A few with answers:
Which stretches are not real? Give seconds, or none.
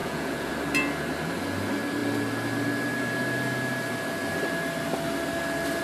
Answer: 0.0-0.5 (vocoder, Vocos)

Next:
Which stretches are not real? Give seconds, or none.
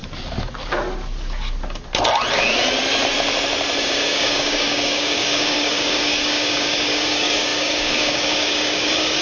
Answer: 3.8-9.2 (codec, DAC)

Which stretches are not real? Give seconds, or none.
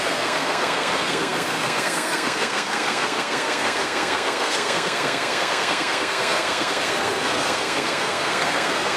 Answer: 0.0-9.0 (codec, SNAC)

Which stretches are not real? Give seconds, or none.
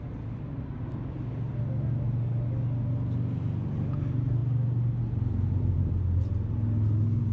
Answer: none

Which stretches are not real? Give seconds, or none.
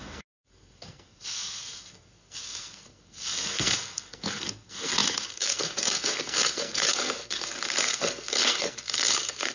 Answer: 0.0-9.5 (codec, SNAC)